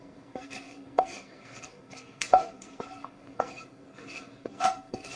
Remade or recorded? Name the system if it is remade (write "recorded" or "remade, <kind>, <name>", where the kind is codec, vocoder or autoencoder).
remade, codec, SNAC